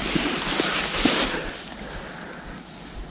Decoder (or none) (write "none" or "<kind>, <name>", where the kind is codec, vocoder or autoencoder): none